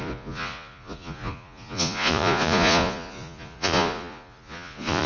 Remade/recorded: remade